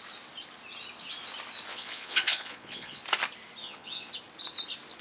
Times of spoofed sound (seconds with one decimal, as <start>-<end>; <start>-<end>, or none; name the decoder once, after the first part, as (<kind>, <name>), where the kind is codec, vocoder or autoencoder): 1.7-3.0 (vocoder, Vocos); 3.6-4.1